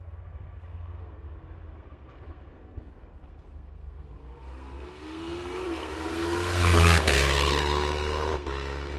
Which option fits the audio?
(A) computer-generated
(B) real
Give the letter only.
A